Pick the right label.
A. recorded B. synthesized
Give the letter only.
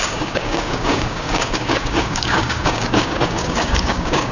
B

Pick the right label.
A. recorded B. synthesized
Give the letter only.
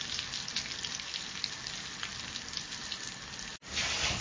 A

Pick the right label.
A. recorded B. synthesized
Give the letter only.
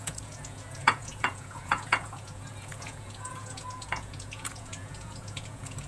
B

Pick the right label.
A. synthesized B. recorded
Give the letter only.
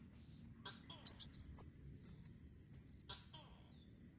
B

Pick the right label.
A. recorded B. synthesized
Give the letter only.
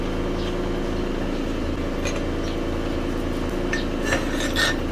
A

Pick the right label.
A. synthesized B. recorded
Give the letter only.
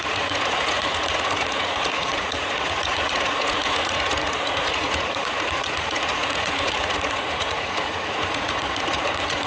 A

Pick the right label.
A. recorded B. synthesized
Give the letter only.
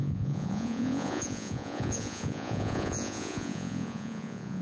B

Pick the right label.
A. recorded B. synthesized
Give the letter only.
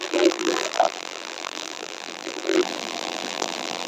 B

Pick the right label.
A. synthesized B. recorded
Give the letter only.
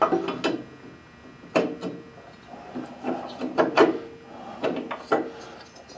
B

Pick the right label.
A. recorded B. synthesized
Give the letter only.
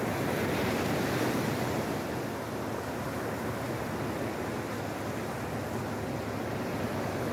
A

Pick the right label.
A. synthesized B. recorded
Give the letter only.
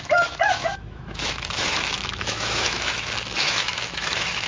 A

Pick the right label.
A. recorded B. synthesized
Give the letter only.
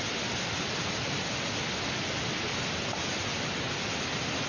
A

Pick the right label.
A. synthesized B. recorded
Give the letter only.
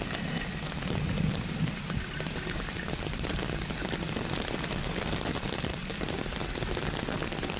A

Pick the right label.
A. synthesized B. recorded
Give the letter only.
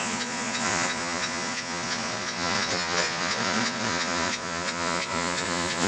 A